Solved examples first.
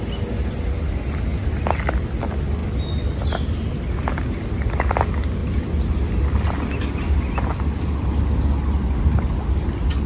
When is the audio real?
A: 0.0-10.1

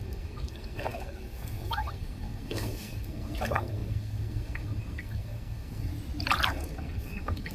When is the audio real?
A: 5.9-6.5

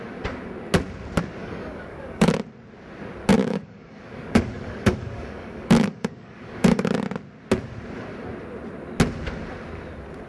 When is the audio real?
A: 0.0-1.4; 2.3-3.4; 6.9-10.3

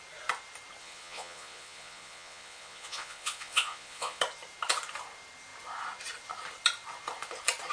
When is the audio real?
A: 0.0-0.8; 4.2-7.7

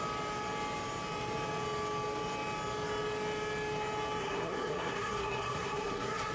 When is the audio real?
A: 0.0-4.2

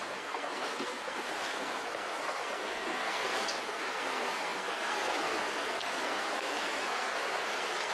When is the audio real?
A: none

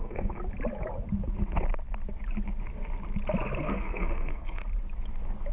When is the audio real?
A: 0.4-3.7; 4.6-5.5

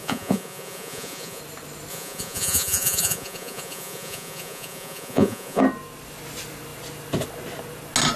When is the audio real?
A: 1.4-1.9; 5.6-8.2